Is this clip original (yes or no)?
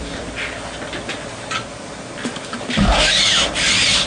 yes